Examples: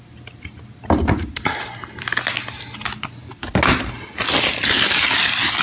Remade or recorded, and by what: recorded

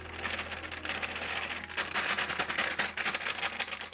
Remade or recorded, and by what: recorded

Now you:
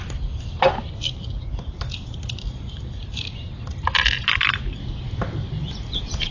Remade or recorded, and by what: recorded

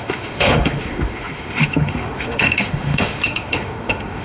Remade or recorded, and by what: remade, autoencoder, DAC-VAE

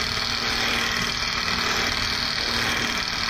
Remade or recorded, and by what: recorded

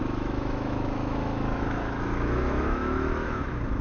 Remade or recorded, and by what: remade, autoencoder, DAC-VAE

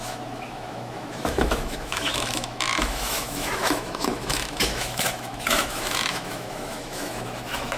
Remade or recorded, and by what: remade, autoencoder, DAC-VAE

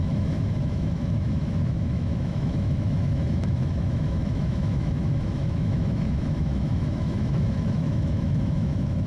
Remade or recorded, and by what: remade, autoencoder, DAC-VAE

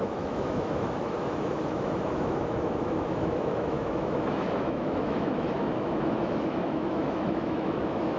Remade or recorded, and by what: remade, autoencoder, DAC-VAE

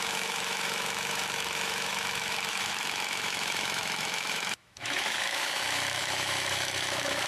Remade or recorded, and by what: remade, autoencoder, DAC-VAE